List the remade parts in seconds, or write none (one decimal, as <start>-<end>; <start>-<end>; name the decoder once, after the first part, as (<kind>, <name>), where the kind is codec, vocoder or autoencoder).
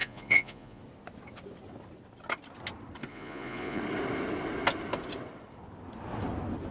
0.0-0.8 (vocoder, Vocos); 3.1-3.8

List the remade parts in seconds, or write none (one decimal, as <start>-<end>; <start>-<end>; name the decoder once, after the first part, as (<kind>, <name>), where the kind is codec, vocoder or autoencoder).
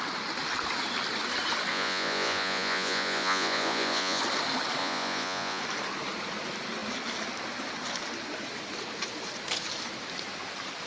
1.7-4.2 (vocoder, Vocos); 4.8-5.6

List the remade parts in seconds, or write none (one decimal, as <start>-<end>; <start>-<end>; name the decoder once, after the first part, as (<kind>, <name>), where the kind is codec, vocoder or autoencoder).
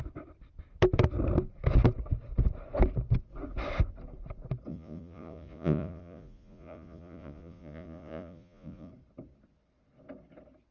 4.7-8.9 (vocoder, Vocos)